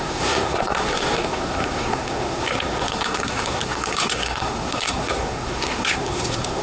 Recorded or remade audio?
remade